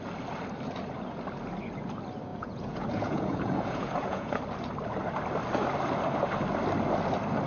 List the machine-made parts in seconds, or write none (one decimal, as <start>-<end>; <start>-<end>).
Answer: 2.3-4.4